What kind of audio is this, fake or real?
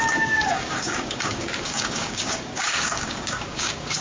fake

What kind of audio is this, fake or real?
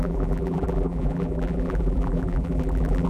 fake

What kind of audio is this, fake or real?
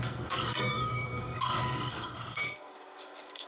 fake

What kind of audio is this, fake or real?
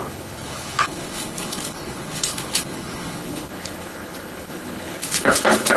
fake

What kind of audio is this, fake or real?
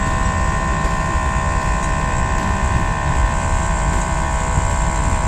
fake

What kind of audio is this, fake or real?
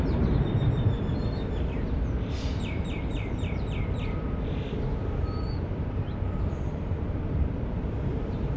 fake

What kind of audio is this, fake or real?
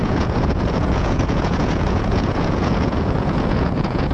fake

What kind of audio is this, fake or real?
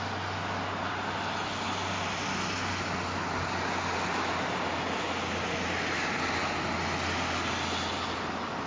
real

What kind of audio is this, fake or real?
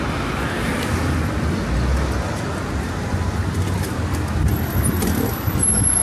real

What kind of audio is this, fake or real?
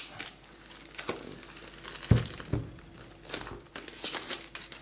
real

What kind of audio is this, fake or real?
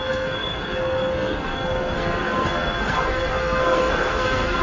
fake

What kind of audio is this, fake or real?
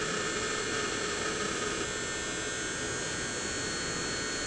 real